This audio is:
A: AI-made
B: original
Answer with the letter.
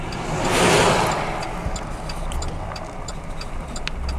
B